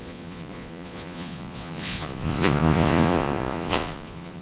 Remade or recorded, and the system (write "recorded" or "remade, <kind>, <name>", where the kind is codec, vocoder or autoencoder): remade, vocoder, Vocos